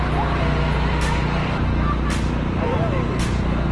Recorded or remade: recorded